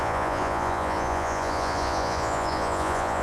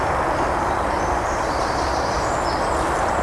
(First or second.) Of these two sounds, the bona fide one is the second